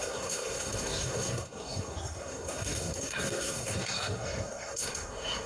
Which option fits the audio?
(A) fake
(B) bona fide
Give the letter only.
A